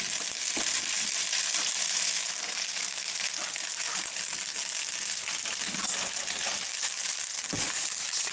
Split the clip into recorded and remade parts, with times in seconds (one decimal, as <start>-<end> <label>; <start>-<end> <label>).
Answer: 0.0-1.8 recorded; 1.8-2.3 remade; 2.3-2.7 recorded; 2.7-3.3 remade; 3.3-8.3 recorded